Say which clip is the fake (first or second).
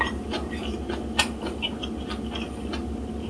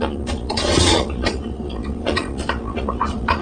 second